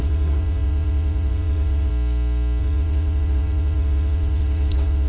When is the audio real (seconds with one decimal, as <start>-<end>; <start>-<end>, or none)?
1.9-2.6